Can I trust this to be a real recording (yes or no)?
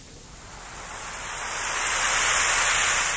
no